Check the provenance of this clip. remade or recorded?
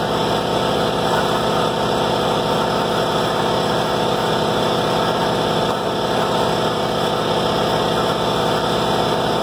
recorded